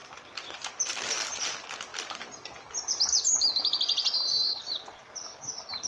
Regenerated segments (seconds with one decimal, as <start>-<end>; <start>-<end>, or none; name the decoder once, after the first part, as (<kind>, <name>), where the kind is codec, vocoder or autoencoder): 0.0-1.4 (vocoder, BigVGAN v2); 1.9-5.4